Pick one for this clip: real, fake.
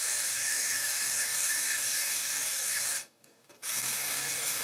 fake